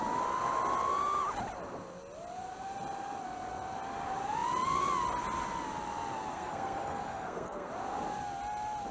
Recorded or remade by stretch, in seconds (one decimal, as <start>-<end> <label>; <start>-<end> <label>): 0.0-6.3 recorded; 6.3-7.7 remade; 7.7-8.9 recorded